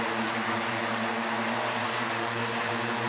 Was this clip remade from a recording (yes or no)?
yes